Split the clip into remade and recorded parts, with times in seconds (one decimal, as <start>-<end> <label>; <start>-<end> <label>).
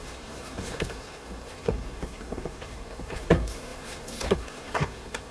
0.0-5.3 remade